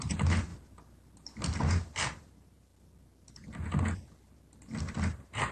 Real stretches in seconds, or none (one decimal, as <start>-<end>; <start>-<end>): 0.5-1.6; 2.7-5.0